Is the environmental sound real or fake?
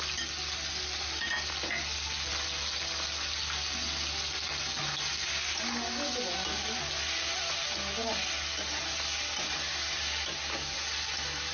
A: real